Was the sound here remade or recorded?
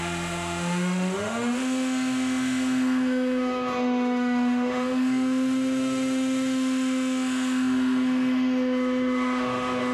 remade